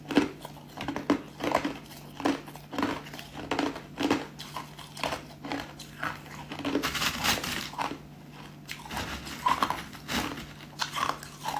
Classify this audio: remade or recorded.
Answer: recorded